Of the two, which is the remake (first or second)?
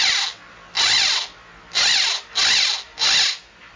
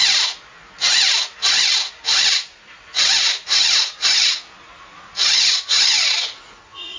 second